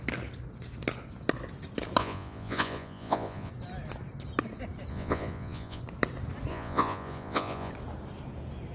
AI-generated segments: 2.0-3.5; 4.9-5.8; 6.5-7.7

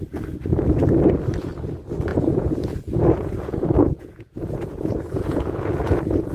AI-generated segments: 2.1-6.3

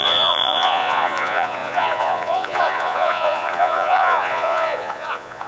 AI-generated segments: 0.0-5.5

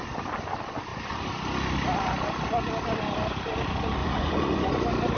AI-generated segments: 4.0-4.7

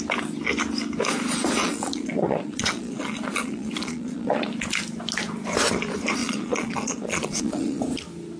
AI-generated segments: 1.6-4.5; 6.2-7.8